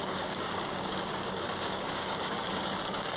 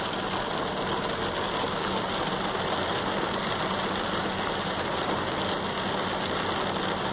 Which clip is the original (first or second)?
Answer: second